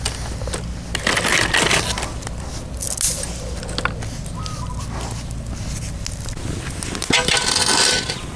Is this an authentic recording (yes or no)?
yes